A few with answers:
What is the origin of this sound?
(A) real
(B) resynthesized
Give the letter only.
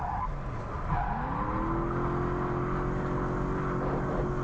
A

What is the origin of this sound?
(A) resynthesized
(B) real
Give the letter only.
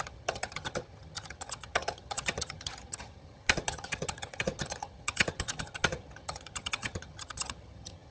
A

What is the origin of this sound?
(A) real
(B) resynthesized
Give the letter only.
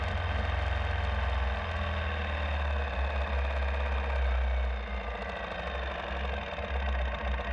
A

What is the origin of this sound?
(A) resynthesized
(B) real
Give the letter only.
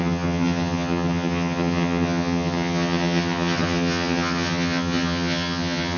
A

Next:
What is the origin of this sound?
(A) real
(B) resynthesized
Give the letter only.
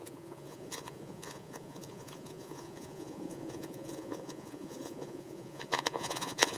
B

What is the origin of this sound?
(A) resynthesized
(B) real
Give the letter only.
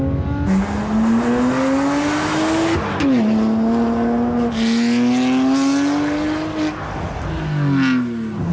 B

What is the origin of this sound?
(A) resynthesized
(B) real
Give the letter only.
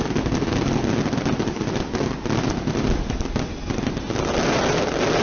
B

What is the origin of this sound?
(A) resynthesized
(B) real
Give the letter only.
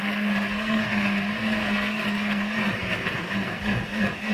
A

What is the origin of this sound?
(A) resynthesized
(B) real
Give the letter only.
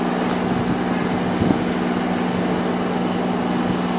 B